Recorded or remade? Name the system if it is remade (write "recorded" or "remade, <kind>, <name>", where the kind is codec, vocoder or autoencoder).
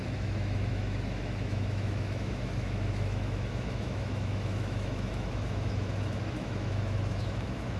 remade, autoencoder, DAC-VAE